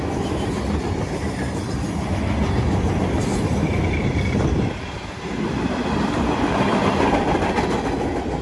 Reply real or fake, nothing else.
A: real